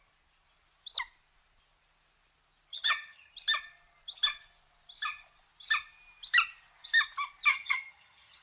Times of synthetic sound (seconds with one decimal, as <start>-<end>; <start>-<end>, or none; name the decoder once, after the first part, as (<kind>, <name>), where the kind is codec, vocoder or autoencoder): 2.7-3.3 (vocoder, HiFi-GAN); 7.5-8.4